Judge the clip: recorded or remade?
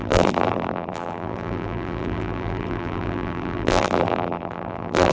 remade